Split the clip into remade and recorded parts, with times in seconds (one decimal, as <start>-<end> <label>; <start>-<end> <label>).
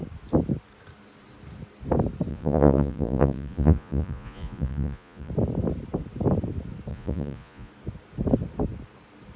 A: 0.0-2.3 recorded; 2.3-5.3 remade; 5.3-6.9 recorded; 6.9-7.7 remade; 7.7-9.4 recorded